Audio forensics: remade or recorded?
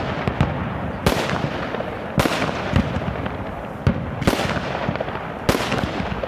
recorded